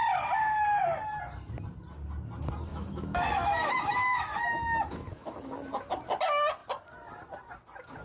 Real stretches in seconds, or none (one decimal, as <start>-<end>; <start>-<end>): 0.0-2.7; 5.5-8.0

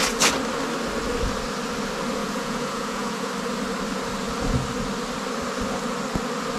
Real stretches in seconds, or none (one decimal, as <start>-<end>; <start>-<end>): 0.0-2.2; 3.3-6.6

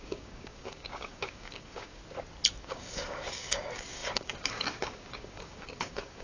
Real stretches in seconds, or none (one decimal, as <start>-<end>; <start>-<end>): 2.0-2.6

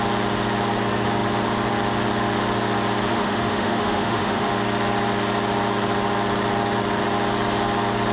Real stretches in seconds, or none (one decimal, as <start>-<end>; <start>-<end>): 0.0-3.1; 4.5-8.1

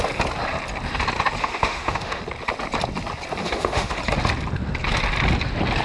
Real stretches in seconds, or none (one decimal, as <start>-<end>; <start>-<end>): 0.0-1.4; 2.2-3.4; 4.0-5.8

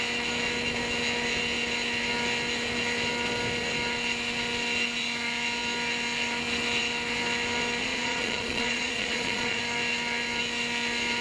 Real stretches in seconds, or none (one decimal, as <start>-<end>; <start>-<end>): 0.0-7.8; 9.6-11.2